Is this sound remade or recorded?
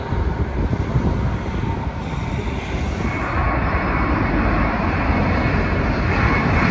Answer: recorded